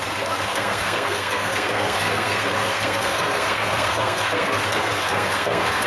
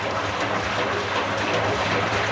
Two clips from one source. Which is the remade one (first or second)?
first